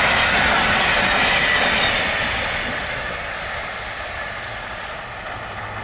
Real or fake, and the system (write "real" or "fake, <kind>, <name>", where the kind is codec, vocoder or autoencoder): real